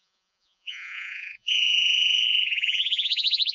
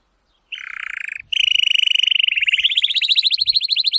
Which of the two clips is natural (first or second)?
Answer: second